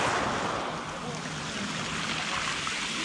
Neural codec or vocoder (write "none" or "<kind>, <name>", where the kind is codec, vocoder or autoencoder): none